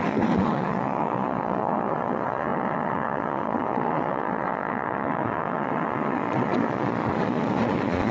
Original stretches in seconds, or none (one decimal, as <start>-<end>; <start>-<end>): none